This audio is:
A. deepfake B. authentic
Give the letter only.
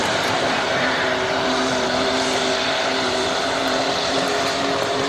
A